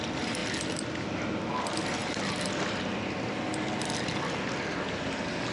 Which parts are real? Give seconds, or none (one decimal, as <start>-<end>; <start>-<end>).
0.0-5.5